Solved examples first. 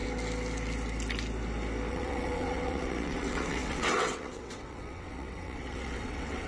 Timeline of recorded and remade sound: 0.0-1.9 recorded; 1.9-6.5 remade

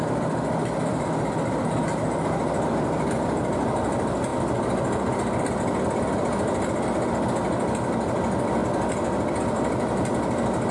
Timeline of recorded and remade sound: 0.0-10.7 recorded